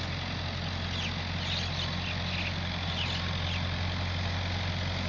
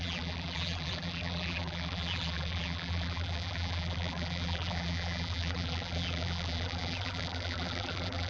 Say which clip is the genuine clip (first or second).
first